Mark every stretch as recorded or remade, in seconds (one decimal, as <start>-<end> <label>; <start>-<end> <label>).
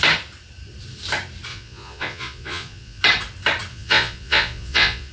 0.0-1.5 recorded; 1.5-3.0 remade; 3.0-3.7 recorded; 3.7-5.1 remade